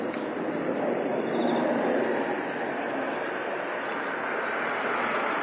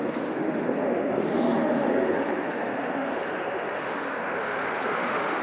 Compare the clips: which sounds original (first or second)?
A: first